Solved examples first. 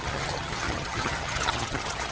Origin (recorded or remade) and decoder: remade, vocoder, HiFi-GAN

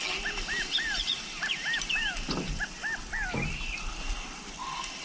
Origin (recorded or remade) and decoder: recorded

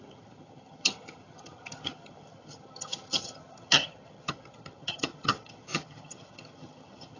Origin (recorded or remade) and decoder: remade, vocoder, HiFi-GAN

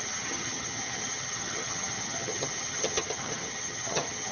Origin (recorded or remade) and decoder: remade, vocoder, HiFi-GAN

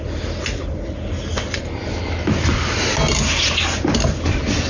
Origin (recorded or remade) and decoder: recorded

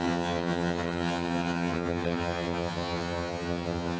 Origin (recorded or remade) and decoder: remade, vocoder, HiFi-GAN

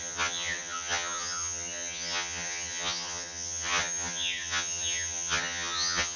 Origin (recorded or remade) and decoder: remade, vocoder, HiFi-GAN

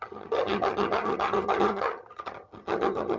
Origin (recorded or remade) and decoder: remade, vocoder, HiFi-GAN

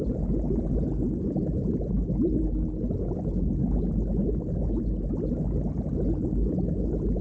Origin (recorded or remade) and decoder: recorded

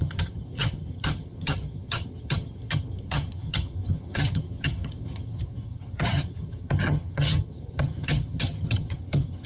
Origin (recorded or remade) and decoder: remade, vocoder, HiFi-GAN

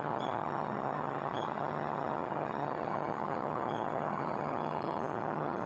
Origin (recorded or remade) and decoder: remade, vocoder, HiFi-GAN